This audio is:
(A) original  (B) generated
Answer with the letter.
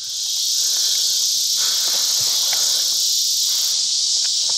A